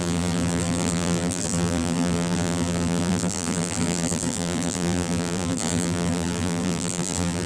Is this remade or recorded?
remade